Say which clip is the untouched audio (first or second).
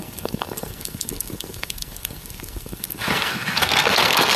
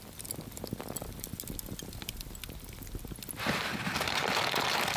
second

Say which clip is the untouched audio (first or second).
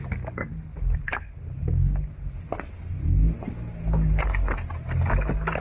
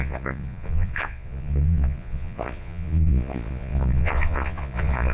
first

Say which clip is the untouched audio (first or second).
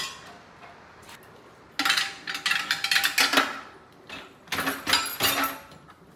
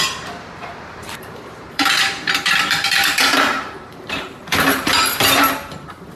first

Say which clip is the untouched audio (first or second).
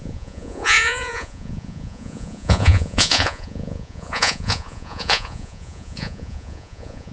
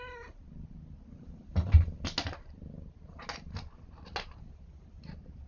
second